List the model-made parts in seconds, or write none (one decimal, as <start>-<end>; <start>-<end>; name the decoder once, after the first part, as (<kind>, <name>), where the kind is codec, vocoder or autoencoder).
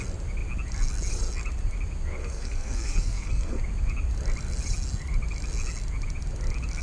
2.2-3.6 (codec, SNAC)